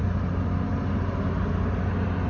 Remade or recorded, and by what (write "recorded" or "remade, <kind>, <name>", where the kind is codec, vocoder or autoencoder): recorded